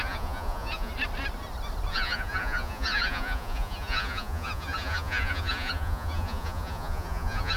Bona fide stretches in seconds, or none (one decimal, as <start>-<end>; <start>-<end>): 0.9-1.9